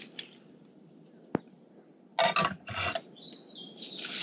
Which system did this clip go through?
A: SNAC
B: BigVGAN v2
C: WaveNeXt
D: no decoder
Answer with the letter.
D